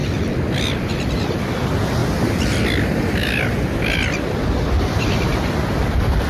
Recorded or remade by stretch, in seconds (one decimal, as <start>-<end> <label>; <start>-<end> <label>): 0.0-6.3 remade